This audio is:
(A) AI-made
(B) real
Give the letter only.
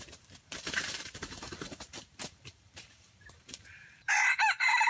A